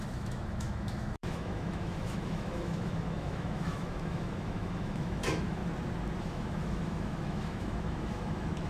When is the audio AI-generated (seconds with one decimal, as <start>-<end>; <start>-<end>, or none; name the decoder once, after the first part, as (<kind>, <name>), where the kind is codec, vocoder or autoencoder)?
0.0-5.6 (autoencoder, DAC-VAE); 6.2-8.7